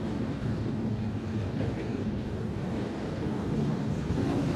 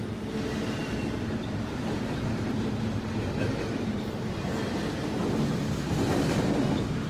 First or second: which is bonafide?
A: second